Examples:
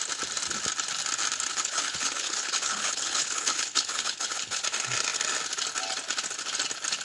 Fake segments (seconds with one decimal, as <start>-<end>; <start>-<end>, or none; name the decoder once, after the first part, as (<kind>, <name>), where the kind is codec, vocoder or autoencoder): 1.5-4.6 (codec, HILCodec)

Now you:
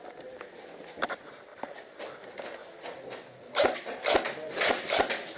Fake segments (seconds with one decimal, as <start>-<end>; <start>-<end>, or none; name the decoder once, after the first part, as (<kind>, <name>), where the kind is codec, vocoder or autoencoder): none

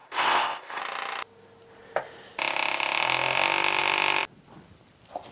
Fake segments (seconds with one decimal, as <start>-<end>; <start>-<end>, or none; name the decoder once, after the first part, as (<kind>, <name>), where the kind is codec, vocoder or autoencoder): 0.0-0.8 (codec, ZipCodec)